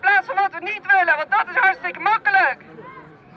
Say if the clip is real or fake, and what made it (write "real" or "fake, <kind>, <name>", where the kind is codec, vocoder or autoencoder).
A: real